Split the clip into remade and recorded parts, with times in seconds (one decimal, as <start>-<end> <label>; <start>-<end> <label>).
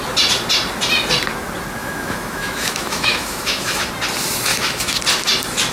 0.0-1.8 recorded; 1.8-3.9 remade; 3.9-4.5 recorded; 4.5-5.0 remade; 5.0-5.7 recorded